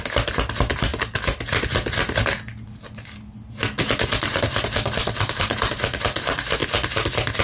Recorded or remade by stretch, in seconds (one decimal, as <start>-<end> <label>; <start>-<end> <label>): 0.0-0.9 remade; 0.9-5.3 recorded; 5.3-6.6 remade; 6.6-7.4 recorded